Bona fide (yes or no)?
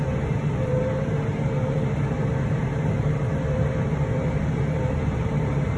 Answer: no